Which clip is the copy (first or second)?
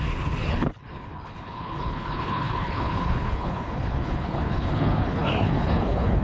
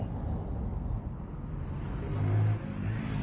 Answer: first